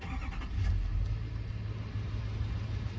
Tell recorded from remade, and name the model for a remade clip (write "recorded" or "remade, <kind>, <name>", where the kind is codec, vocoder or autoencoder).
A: recorded